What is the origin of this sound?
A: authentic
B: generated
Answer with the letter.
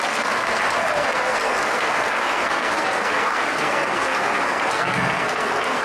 B